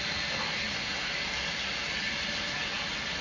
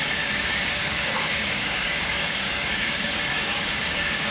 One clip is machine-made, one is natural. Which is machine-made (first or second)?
second